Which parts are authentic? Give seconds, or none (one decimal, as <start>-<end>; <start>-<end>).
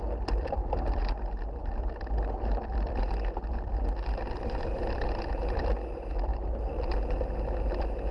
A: 0.0-8.1